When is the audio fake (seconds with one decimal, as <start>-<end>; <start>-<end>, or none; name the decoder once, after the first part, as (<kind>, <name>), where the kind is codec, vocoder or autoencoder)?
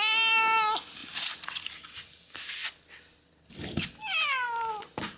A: 1.0-1.7 (vocoder, BigVGAN v2)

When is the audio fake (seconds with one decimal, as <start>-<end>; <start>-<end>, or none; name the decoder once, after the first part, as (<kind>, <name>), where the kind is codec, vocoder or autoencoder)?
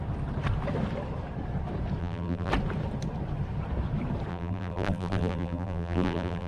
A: 2.0-2.5 (vocoder, BigVGAN v2); 4.3-6.5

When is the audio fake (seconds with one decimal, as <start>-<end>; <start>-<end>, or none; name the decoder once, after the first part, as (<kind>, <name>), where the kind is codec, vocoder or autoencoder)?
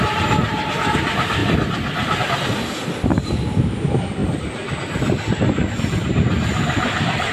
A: 0.0-1.4 (vocoder, BigVGAN v2); 2.2-4.2; 5.7-7.3